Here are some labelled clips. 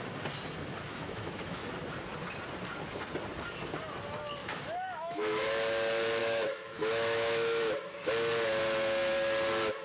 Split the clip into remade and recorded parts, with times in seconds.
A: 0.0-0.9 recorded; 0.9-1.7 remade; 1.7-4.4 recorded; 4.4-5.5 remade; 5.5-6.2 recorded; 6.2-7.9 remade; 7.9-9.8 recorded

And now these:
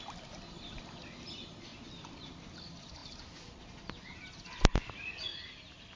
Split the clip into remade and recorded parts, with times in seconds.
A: 0.0-6.0 recorded

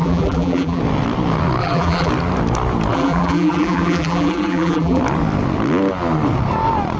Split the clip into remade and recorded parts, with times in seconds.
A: 0.0-0.8 remade; 0.8-1.6 recorded; 1.6-2.1 remade; 2.1-2.9 recorded; 2.9-5.0 remade; 5.0-7.0 recorded

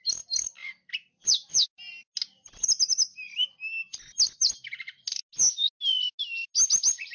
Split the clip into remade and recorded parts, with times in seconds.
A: 0.0-0.6 recorded; 0.6-1.5 remade; 1.5-4.4 recorded; 4.4-5.0 remade; 5.0-7.1 recorded